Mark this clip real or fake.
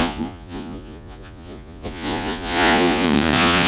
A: fake